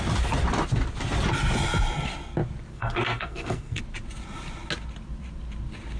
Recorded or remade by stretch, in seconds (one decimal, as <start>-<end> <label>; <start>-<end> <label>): 0.0-2.7 recorded; 2.7-3.8 remade; 3.8-6.0 recorded